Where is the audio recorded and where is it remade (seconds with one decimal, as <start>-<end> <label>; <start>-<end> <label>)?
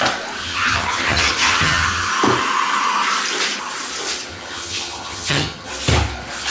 0.0-0.4 recorded; 0.4-2.1 remade; 2.1-4.3 recorded; 4.3-5.7 remade; 5.7-6.5 recorded